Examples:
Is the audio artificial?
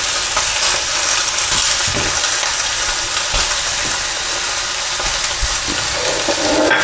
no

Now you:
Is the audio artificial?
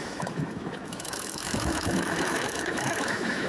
yes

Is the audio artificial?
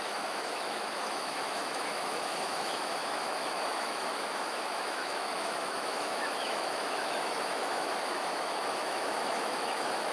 yes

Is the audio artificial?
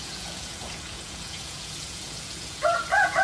yes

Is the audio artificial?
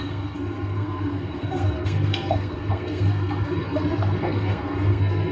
yes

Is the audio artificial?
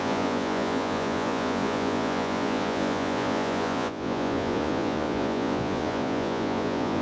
yes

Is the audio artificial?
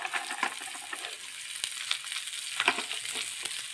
no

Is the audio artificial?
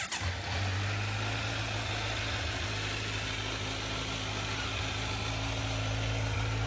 no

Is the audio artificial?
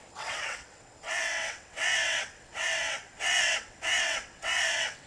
yes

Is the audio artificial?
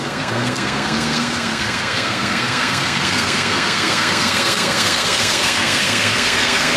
yes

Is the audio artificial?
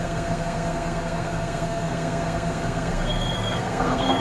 yes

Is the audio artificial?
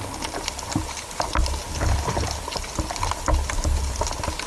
no